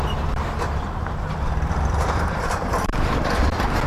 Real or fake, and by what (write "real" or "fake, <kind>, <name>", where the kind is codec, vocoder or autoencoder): fake, vocoder, BigVGAN v2